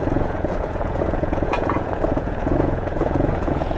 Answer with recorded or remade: remade